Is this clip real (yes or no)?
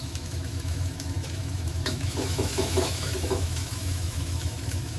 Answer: no